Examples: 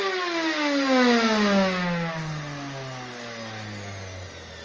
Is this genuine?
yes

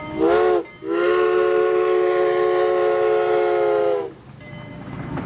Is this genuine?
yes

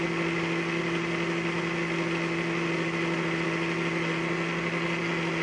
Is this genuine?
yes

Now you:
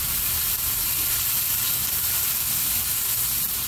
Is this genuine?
yes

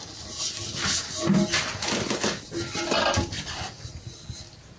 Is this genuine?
yes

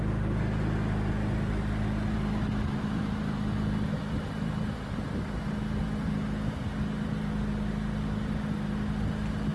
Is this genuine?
yes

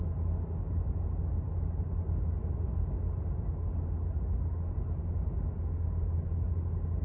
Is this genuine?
yes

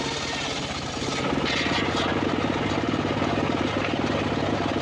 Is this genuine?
yes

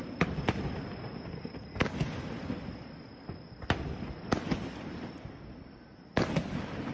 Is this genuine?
yes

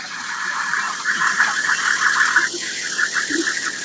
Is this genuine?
yes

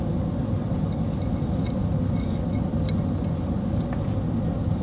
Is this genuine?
yes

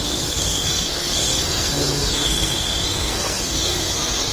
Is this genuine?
no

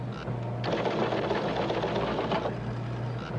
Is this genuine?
yes